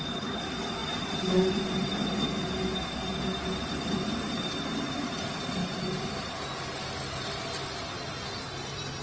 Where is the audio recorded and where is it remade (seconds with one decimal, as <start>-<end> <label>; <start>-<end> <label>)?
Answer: 0.0-5.6 recorded; 5.6-6.1 remade; 6.1-9.0 recorded